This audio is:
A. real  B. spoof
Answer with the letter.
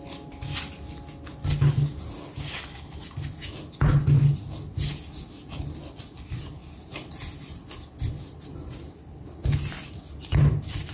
A